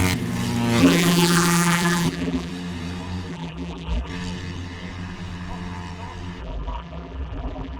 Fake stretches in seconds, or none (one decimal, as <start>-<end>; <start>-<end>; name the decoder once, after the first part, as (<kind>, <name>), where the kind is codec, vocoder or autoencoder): 0.8-2.5 (vocoder, BigVGAN v2); 3.3-4.1; 6.4-7.8